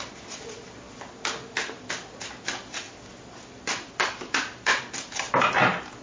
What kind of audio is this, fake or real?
real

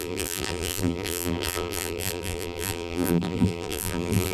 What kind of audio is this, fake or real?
fake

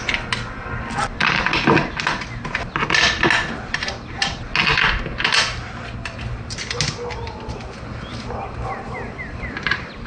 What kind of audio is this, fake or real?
real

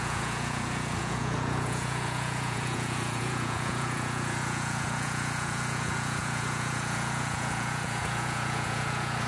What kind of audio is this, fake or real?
fake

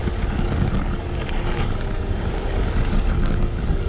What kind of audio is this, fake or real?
fake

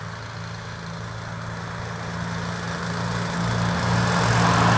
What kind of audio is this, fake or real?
real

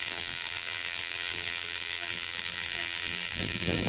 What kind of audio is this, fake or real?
fake